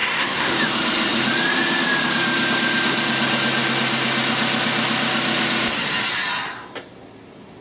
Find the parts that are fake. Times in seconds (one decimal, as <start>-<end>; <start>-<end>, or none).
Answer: 0.0-0.5